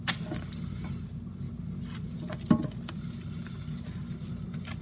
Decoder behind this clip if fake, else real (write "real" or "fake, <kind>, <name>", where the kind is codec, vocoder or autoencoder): real